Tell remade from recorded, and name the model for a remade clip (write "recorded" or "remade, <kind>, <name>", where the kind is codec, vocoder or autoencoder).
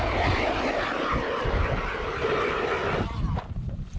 recorded